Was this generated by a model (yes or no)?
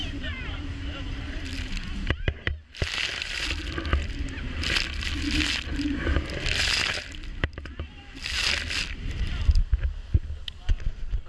no